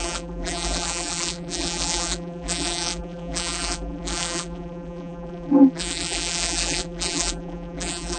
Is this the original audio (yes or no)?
no